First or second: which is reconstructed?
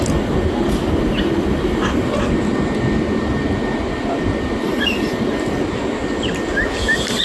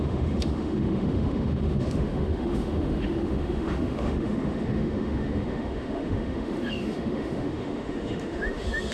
second